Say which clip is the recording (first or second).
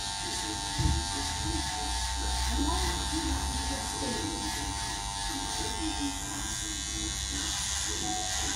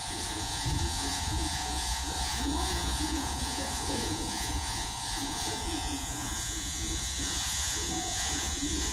first